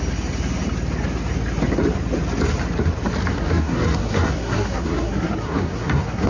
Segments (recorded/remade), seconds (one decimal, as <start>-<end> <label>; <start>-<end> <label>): 0.0-3.3 recorded; 3.3-6.3 remade